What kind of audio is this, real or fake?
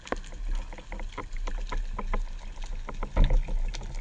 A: real